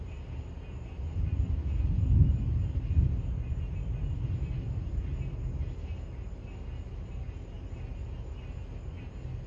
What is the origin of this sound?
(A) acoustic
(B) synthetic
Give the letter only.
A